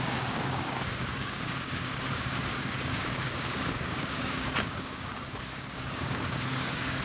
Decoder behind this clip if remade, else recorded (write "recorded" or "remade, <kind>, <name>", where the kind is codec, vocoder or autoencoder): remade, codec, DAC